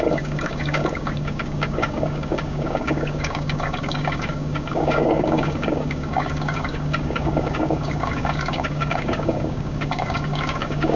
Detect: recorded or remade remade